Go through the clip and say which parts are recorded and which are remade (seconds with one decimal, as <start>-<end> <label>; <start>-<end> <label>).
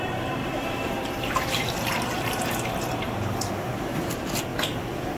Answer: 0.0-0.4 recorded; 0.4-3.5 remade; 3.5-5.2 recorded